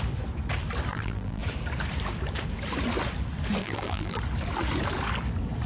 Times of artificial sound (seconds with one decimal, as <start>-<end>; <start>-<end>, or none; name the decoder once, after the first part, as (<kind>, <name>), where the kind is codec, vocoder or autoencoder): 0.9-1.4 (vocoder, BigVGAN v2); 3.6-4.2